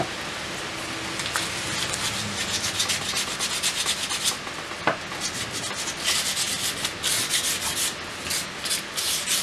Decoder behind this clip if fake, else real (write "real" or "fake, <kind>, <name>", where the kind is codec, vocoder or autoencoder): real